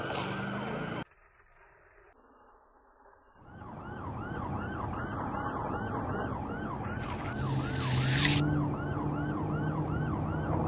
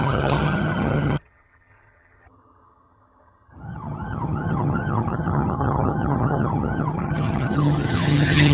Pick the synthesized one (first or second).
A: second